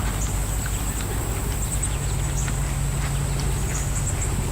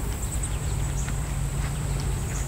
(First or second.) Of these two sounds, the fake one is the second